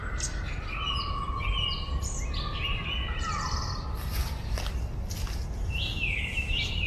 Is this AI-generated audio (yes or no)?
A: no